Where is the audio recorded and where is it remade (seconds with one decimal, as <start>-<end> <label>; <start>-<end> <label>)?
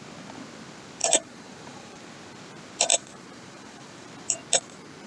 0.0-1.0 recorded; 1.0-2.0 remade; 2.0-2.9 recorded; 2.9-4.1 remade; 4.1-5.1 recorded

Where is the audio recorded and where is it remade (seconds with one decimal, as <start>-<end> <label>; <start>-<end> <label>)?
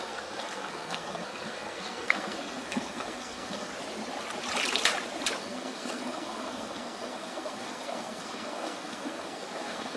0.0-3.7 remade; 3.7-5.4 recorded; 5.4-10.0 remade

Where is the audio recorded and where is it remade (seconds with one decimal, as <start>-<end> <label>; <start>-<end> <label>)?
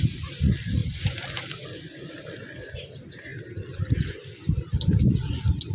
0.0-5.7 remade